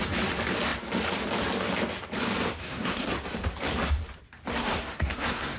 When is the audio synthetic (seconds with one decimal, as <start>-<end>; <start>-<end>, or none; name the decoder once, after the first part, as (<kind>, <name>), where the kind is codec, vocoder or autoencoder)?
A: 2.6-3.1 (codec, SNAC); 4.5-5.6